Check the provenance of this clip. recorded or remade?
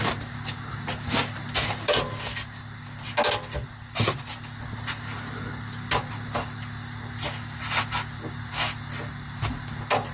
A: recorded